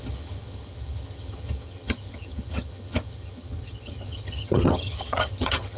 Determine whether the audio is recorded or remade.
remade